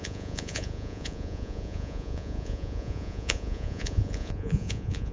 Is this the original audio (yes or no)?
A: no